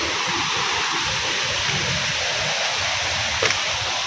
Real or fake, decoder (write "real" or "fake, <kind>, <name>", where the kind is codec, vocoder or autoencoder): fake, vocoder, BigVGAN v2